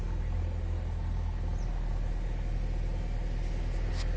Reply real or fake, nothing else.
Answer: real